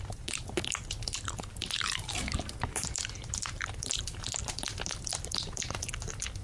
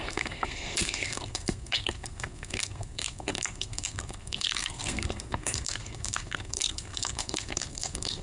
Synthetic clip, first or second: second